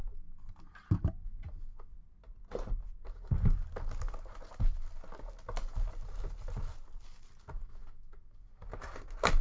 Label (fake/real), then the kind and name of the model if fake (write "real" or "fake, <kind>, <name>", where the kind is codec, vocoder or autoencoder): real